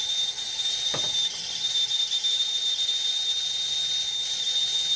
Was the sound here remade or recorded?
recorded